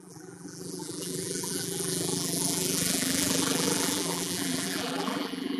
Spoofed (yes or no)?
yes